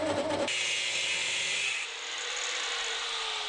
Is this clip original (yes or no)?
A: yes